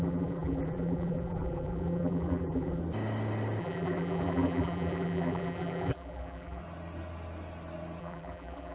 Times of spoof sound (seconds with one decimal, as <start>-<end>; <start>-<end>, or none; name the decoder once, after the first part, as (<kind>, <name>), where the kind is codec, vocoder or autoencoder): 0.0-2.8 (vocoder, BigVGAN v2); 3.6-6.6; 8.0-8.7